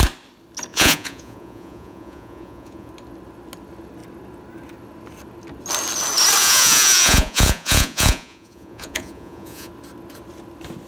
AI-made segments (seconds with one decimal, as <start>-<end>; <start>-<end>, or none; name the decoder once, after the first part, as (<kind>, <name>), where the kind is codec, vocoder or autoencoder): 0.7-2.9 (vocoder, Vocos); 6.4-9.7